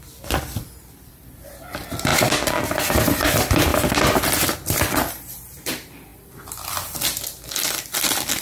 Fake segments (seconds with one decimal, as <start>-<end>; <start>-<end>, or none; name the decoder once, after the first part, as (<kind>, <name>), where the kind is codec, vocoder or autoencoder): 0.0-2.1 (vocoder, BigVGAN v2); 3.2-3.7; 5.1-8.4

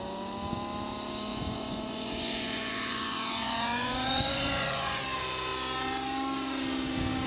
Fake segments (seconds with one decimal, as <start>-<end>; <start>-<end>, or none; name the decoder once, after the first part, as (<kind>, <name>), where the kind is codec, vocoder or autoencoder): 1.3-5.0 (vocoder, Vocos)

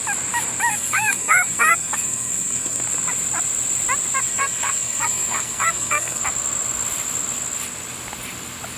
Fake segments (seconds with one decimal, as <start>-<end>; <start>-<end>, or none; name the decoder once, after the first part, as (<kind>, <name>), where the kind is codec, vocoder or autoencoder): 0.7-2.8 (codec, SNAC); 4.2-6.2

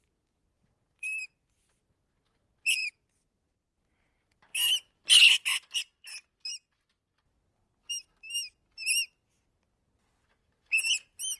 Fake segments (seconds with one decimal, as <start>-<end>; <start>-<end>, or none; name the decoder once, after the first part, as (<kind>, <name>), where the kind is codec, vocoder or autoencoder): none

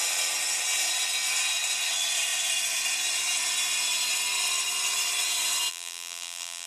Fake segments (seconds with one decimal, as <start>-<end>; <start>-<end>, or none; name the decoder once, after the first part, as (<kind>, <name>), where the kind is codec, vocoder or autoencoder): 5.7-6.7 (vocoder, BigVGAN v2)

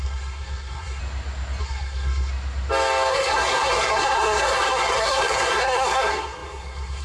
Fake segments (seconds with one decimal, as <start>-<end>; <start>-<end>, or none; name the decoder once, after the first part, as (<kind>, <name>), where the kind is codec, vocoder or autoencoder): 0.0-1.0 (codec, SNAC); 1.6-2.3; 3.1-7.0

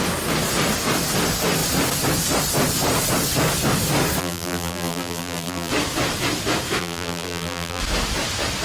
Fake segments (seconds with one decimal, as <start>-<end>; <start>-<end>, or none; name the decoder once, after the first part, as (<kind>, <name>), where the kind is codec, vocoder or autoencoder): 4.2-5.7 (vocoder, BigVGAN v2); 6.8-7.8